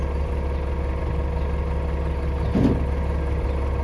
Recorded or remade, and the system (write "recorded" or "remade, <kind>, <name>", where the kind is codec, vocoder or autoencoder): recorded